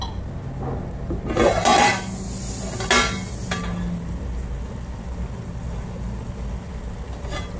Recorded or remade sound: recorded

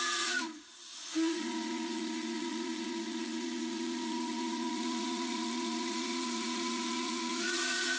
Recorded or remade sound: remade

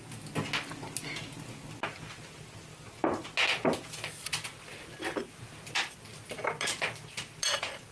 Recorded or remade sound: recorded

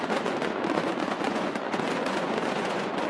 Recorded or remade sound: remade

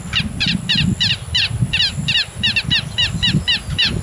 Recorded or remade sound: recorded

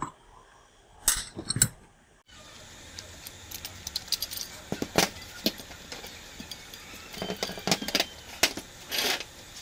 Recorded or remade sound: recorded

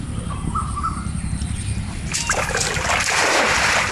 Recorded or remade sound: remade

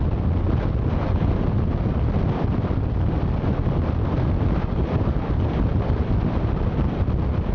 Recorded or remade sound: recorded